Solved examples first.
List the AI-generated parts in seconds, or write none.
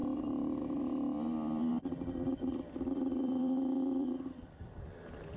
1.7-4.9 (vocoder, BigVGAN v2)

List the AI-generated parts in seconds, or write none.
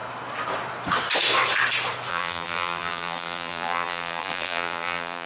2.1-5.3 (vocoder, BigVGAN v2)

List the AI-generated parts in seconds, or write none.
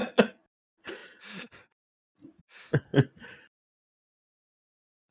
1.0-2.4 (vocoder, BigVGAN v2); 2.9-4.6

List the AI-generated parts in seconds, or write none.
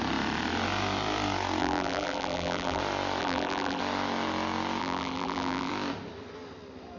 1.6-2.8 (vocoder, BigVGAN v2); 3.2-3.8; 4.8-5.7